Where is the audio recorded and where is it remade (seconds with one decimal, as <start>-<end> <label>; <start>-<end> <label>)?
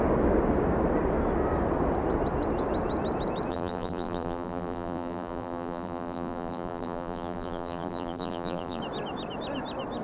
0.0-3.5 recorded; 3.5-8.8 remade; 8.8-10.0 recorded